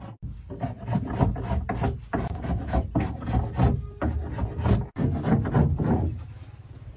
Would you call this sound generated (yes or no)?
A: no